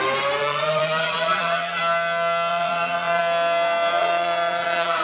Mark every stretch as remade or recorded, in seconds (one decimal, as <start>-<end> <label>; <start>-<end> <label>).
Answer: 0.0-0.4 recorded; 0.4-1.8 remade; 1.8-2.5 recorded; 2.5-3.2 remade; 3.2-3.9 recorded; 3.9-5.0 remade